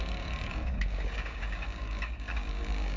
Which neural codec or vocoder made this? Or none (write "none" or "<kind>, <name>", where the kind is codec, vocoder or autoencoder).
codec, DAC